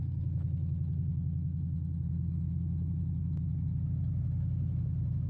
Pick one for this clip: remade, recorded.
recorded